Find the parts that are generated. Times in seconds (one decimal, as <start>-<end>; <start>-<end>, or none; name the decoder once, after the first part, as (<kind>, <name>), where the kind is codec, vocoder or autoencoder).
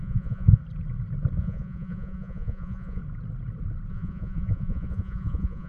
0.0-0.6 (vocoder, Vocos); 1.4-3.0; 3.9-5.7